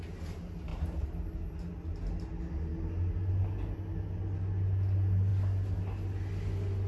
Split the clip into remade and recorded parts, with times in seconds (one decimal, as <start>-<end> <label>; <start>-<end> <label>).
0.0-6.9 recorded